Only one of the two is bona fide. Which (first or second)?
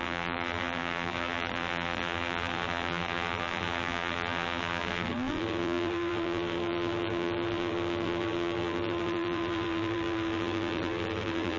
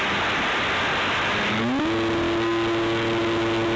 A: second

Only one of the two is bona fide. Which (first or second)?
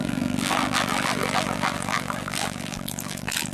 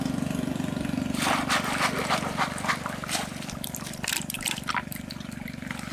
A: second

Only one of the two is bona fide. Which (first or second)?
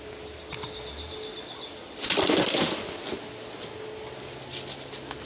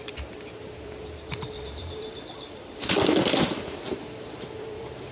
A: first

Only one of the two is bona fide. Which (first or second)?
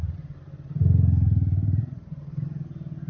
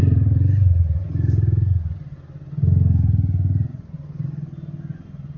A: second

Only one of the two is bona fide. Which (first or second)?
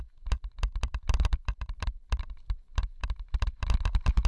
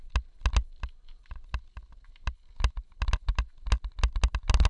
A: second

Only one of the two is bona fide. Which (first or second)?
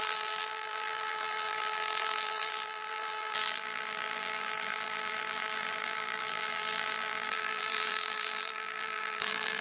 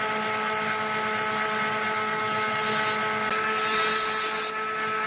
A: second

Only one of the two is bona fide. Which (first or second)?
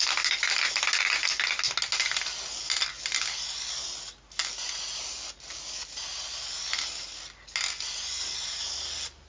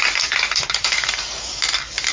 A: first